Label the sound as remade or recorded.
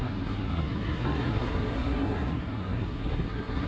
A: remade